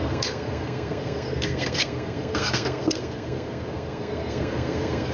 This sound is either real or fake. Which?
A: fake